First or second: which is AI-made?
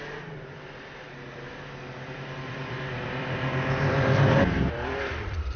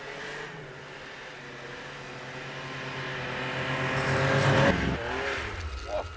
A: first